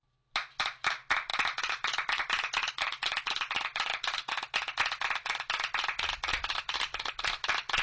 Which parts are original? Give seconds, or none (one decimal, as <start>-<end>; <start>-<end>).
0.0-7.8